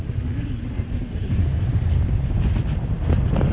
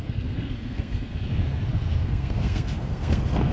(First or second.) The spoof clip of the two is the second